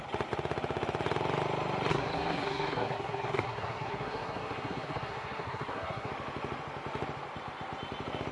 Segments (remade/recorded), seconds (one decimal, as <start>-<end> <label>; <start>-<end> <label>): 0.0-1.9 recorded; 1.9-6.1 remade; 6.1-8.3 recorded